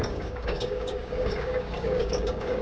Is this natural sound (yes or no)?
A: no